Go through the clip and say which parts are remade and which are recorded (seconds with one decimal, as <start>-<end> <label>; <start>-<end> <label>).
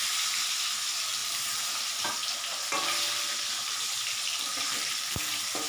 0.0-5.7 remade